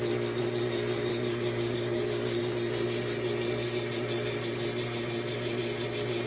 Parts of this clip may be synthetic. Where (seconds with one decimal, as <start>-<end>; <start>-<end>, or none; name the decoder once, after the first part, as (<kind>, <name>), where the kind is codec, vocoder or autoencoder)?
1.1-2.4 (codec, DAC)